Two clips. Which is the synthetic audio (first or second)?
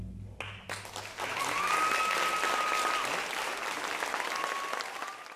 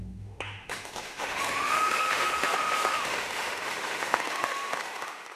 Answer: second